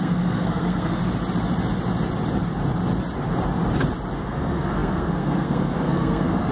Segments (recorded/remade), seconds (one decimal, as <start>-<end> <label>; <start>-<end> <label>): 0.0-1.0 remade; 1.0-4.2 recorded; 4.2-6.5 remade